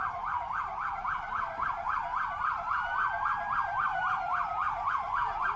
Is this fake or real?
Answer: real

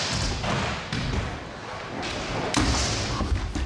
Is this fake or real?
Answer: real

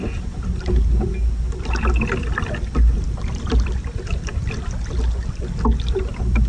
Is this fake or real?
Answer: real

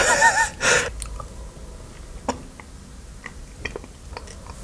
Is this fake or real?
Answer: real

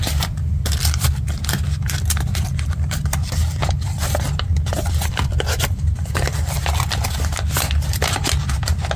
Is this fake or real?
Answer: fake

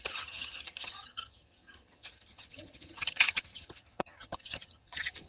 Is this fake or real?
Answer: fake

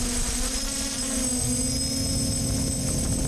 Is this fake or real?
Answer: real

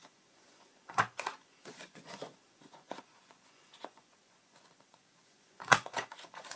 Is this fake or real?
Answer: fake